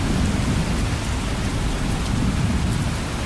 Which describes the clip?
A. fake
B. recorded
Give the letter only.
B